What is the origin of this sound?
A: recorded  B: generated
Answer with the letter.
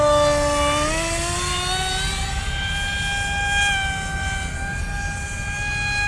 A